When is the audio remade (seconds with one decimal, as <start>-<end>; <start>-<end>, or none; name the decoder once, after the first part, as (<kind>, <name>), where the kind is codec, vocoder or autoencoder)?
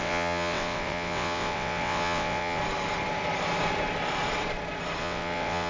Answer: 0.0-2.6 (vocoder, WaveNeXt); 5.0-5.7